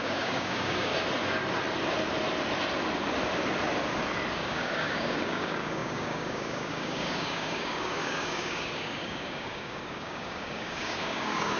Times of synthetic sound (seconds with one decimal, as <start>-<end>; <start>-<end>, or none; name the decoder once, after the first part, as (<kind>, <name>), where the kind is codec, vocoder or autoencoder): 0.0-0.9 (codec, DAC); 4.3-11.6

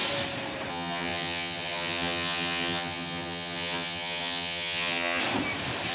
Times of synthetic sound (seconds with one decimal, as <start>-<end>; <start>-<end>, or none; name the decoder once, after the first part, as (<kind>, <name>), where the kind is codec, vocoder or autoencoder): 0.7-5.2 (vocoder, HiFi-GAN)

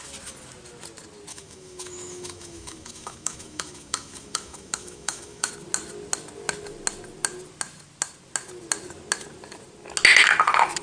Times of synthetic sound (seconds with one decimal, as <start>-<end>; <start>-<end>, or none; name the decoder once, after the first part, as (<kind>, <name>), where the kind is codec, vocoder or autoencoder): 1.3-5.5 (autoencoder, DAC-VAE)

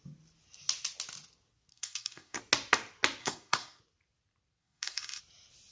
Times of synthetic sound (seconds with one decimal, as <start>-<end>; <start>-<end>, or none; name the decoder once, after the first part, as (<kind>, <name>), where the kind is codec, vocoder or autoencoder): 1.7-2.4 (codec, SNAC); 3.2-3.8; 4.6-5.2

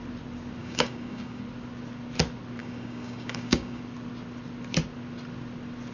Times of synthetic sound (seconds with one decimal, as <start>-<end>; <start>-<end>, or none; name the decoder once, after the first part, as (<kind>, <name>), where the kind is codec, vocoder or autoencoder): 0.6-1.4 (codec, DAC); 2.6-3.8

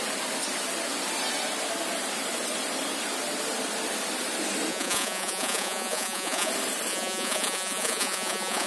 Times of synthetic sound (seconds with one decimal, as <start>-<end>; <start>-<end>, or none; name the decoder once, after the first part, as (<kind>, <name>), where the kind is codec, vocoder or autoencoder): 4.7-6.5 (vocoder, Vocos); 6.9-8.7

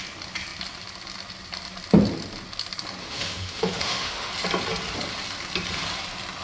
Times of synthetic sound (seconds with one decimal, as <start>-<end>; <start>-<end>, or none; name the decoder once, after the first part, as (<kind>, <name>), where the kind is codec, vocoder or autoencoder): 3.0-4.3 (autoencoder, DAC-VAE)

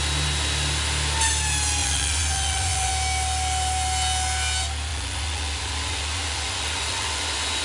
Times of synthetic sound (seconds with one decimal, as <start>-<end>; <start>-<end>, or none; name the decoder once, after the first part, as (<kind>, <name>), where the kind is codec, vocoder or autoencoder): 1.8-2.9 (vocoder, Vocos); 4.9-7.6